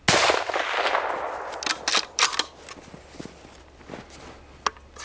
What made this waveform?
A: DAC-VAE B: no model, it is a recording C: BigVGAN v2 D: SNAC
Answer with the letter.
B